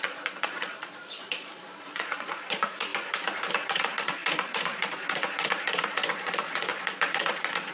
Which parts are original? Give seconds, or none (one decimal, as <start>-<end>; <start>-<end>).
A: 2.9-3.5